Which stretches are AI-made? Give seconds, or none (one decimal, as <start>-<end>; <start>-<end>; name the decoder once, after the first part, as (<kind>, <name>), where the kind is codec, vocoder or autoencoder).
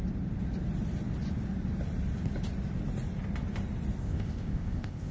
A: 4.0-5.1 (codec, ZipCodec)